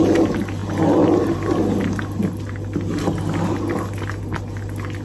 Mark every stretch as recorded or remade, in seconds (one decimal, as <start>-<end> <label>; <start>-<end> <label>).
0.0-5.0 recorded